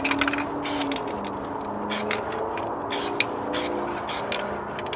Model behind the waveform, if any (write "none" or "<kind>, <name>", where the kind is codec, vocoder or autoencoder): none